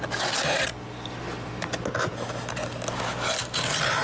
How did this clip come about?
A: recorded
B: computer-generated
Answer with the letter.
A